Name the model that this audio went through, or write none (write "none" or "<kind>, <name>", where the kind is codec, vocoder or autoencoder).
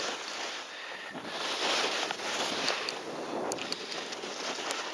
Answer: none